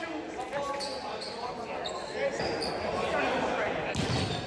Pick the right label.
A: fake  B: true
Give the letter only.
B